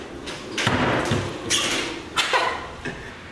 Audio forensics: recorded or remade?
recorded